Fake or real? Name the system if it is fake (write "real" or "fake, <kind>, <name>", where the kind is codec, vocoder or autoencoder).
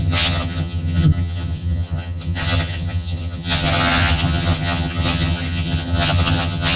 fake, vocoder, HiFi-GAN